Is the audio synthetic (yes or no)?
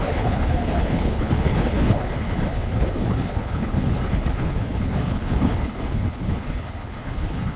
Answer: yes